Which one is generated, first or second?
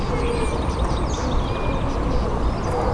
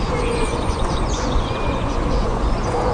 second